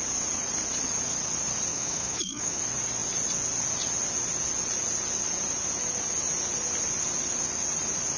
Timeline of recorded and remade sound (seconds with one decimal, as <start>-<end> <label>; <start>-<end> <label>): 0.0-1.7 recorded; 1.7-2.6 remade; 2.6-8.2 recorded